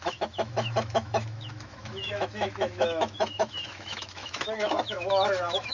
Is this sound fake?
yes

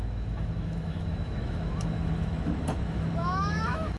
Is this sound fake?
yes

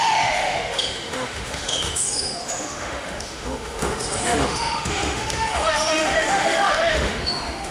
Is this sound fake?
yes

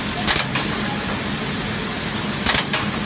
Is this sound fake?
no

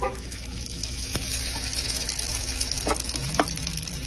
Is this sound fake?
yes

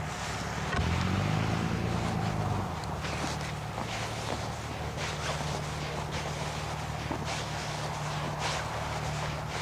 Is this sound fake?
no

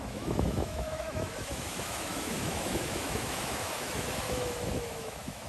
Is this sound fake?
yes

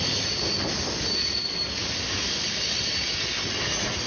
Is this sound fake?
no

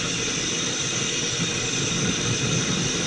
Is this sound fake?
no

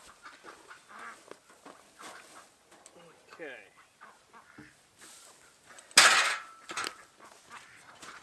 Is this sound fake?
no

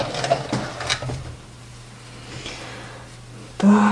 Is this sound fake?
no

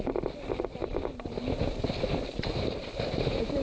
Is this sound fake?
no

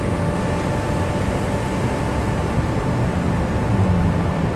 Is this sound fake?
no